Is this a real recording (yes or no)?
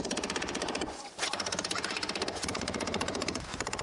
no